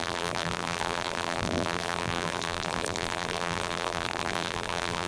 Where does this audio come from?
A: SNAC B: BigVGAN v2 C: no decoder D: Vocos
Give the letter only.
B